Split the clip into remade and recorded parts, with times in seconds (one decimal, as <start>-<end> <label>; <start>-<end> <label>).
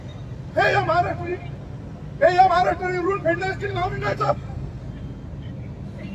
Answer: 0.0-3.7 recorded; 3.7-4.8 remade; 4.8-6.1 recorded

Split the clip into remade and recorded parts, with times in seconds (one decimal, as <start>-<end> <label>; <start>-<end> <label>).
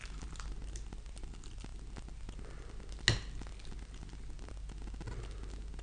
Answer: 0.0-5.8 recorded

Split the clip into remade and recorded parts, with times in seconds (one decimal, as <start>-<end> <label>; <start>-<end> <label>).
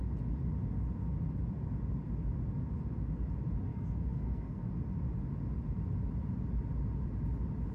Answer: 0.0-3.7 recorded; 3.7-4.7 remade; 4.7-7.7 recorded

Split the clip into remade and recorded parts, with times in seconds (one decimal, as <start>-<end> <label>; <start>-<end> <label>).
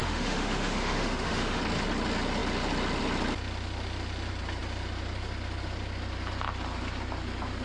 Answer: 0.0-1.6 remade; 1.6-7.6 recorded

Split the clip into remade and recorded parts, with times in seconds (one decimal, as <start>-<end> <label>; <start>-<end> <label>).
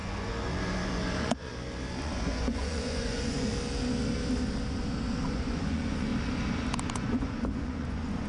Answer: 0.0-1.5 remade; 1.5-2.0 recorded; 2.0-3.5 remade; 3.5-5.3 recorded; 5.3-6.1 remade; 6.1-6.9 recorded; 6.9-8.3 remade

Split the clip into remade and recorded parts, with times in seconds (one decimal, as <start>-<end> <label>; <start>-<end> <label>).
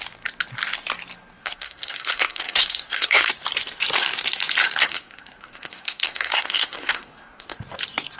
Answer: 0.0-1.4 recorded; 1.4-3.3 remade; 3.3-4.8 recorded; 4.8-7.6 remade; 7.6-8.2 recorded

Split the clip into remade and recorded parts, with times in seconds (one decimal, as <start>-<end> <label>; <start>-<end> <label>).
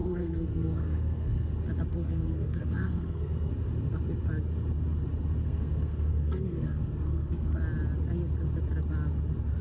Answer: 0.0-1.5 remade; 1.5-1.9 recorded; 1.9-3.5 remade; 3.5-5.4 recorded; 5.4-7.6 remade; 7.6-9.6 recorded